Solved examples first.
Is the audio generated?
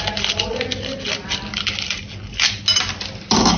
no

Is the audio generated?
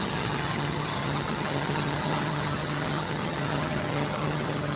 yes